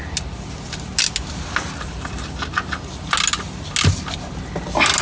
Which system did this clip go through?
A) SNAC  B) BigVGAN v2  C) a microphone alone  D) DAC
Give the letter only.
C